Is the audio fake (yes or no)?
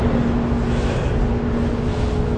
no